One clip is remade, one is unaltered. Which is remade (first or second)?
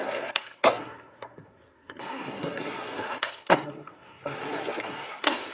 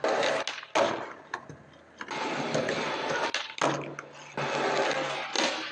first